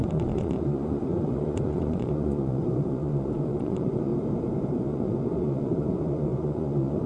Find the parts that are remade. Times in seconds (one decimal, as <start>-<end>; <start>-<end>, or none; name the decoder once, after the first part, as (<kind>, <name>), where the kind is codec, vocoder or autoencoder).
0.0-4.1 (vocoder, Vocos); 4.7-7.1